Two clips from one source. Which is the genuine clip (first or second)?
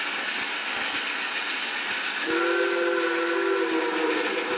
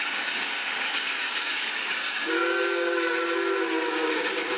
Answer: first